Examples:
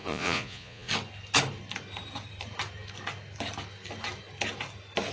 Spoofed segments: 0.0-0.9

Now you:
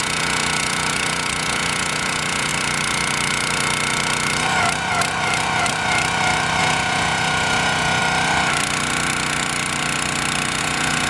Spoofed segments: 0.0-2.5; 6.6-8.0; 10.6-11.1

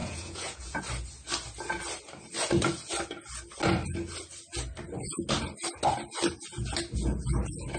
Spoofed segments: 0.0-0.8

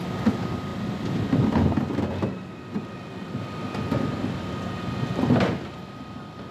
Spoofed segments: none

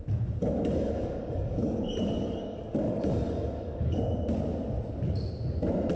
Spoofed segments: 0.4-4.0

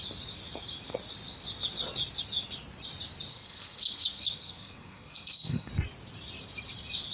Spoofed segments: 3.3-5.7

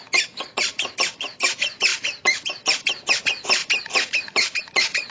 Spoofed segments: 0.6-5.1

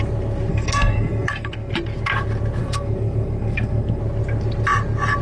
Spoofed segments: 0.5-1.7; 2.6-4.0